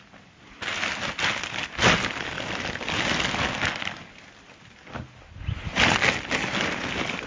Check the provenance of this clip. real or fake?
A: real